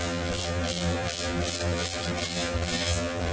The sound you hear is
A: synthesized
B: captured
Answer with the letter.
A